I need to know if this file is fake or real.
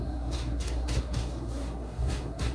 fake